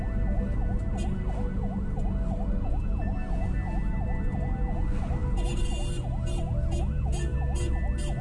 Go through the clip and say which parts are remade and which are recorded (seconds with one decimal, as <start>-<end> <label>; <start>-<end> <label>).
0.0-8.2 recorded